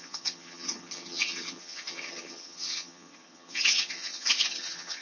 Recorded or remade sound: remade